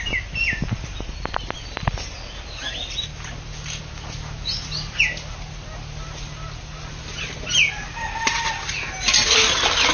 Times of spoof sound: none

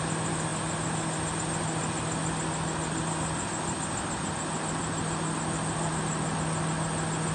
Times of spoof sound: none

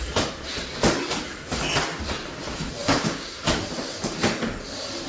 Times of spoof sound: 2.8-3.3 (codec, DAC)

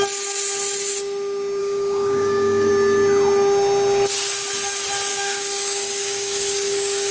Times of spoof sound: 1.6-2.7 (codec, DAC); 5.1-7.1

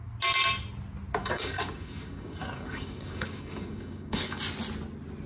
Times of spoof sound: 1.2-4.4 (codec, DAC)

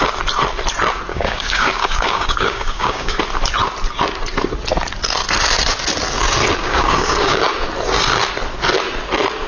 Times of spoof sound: 1.1-3.2 (codec, DAC); 6.6-7.4

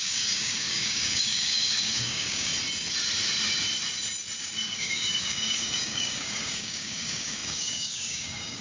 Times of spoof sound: 0.0-2.5 (codec, DAC); 4.7-8.6

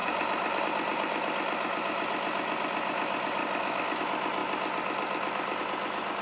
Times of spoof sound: 3.4-4.0 (codec, DAC)